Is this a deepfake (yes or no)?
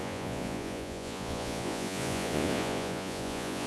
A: yes